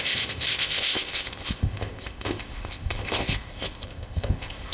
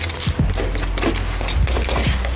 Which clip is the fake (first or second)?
first